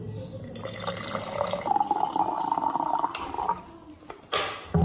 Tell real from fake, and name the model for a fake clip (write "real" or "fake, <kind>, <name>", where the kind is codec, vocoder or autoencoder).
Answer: real